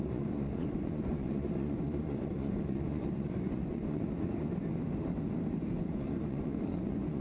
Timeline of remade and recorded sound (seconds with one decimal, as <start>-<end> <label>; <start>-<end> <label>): 0.0-4.5 remade; 4.5-5.8 recorded; 5.8-7.2 remade